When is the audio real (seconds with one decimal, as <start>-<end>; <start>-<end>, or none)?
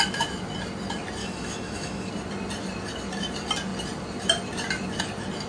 0.0-1.2; 2.1-5.5